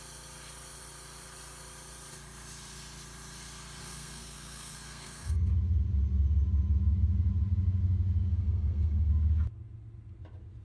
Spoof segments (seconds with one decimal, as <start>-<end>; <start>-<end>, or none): 3.8-5.5; 8.3-9.1